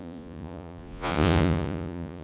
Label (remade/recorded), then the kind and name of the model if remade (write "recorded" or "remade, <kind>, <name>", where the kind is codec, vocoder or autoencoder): remade, vocoder, Vocos